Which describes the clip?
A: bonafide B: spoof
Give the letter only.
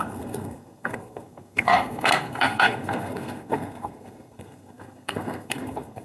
B